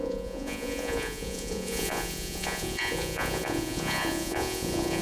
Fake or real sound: fake